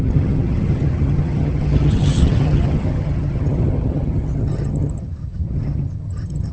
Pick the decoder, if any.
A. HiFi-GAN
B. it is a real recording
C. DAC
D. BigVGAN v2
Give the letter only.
A